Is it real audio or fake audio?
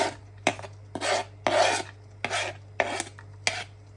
real